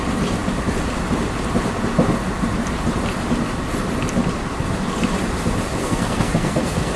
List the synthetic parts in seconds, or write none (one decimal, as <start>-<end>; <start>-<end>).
5.8-7.0